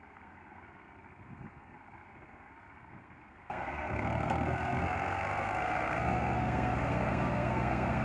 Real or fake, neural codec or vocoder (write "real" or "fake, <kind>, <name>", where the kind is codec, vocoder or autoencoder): fake, codec, SNAC